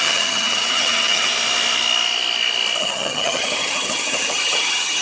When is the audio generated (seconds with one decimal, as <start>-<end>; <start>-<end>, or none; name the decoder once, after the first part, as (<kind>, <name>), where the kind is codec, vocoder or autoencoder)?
0.0-1.3 (vocoder, HiFi-GAN); 2.8-5.0